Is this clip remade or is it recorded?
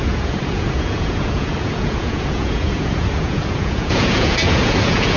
remade